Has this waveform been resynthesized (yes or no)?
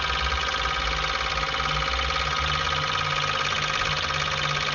no